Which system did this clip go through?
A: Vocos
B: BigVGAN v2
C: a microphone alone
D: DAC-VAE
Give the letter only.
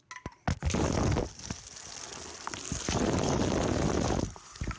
C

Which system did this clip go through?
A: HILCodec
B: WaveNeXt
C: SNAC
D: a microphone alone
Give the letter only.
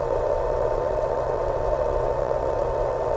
B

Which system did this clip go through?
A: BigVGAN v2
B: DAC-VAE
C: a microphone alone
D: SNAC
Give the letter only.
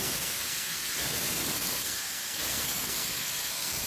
D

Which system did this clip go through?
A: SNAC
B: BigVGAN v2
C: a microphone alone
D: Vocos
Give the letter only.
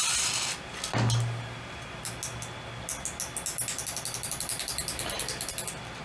C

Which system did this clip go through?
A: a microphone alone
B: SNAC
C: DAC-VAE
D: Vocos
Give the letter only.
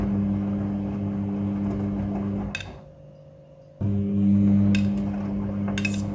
A